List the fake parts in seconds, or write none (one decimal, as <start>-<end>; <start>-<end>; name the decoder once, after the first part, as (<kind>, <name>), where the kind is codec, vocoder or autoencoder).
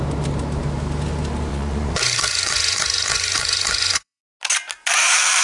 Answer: 1.5-4.2 (vocoder, Vocos)